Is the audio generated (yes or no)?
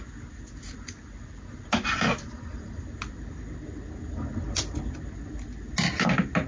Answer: no